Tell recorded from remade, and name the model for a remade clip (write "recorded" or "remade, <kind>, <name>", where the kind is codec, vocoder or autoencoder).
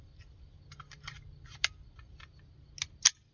recorded